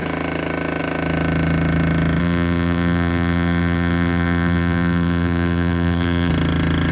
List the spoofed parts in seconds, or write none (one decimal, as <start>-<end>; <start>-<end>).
2.2-6.3